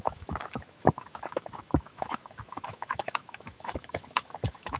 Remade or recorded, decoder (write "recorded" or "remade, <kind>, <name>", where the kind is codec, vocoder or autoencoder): remade, autoencoder, DAC-VAE